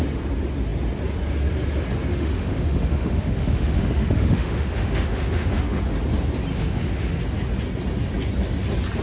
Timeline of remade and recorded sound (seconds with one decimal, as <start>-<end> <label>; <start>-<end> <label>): 0.0-2.1 recorded; 2.1-5.8 remade; 5.8-6.5 recorded; 6.5-7.2 remade; 7.2-9.0 recorded

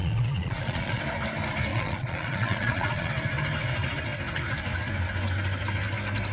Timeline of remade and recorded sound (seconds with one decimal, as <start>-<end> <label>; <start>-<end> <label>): 0.0-1.0 remade; 1.0-1.7 recorded; 1.7-3.1 remade; 3.1-6.3 recorded

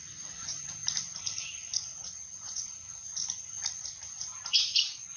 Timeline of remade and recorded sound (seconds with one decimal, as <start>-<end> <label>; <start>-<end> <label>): 0.0-0.6 remade; 0.6-1.7 recorded; 1.7-3.7 remade; 3.7-5.2 recorded

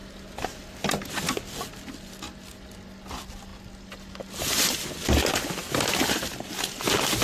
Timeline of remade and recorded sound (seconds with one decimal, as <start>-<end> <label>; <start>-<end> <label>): 0.0-7.2 recorded

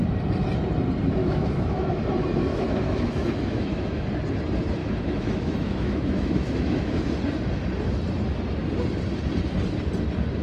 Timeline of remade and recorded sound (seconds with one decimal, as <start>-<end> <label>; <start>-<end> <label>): 0.0-1.2 recorded; 1.2-2.0 remade; 2.0-2.5 recorded; 2.5-4.0 remade; 4.0-4.8 recorded; 4.8-7.1 remade; 7.1-10.4 recorded

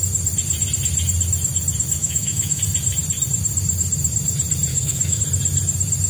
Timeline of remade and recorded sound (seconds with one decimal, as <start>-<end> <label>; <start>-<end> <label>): 0.0-2.0 recorded; 2.0-2.6 remade; 2.6-4.7 recorded; 4.7-5.2 remade; 5.2-6.1 recorded

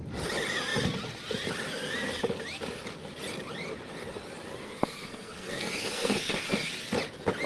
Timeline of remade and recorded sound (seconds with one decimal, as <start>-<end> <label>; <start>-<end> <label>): 0.0-4.6 recorded; 4.6-6.7 remade; 6.7-7.5 recorded

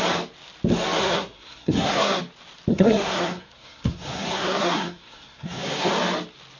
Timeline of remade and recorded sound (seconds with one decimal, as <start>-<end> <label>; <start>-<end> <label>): 0.0-1.0 recorded; 1.0-2.2 remade; 2.2-2.7 recorded; 2.7-5.9 remade; 5.9-6.6 recorded